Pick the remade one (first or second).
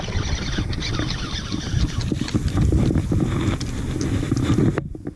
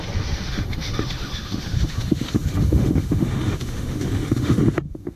second